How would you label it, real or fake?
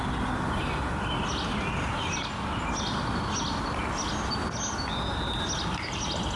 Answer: real